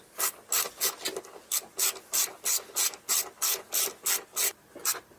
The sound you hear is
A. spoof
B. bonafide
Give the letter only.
B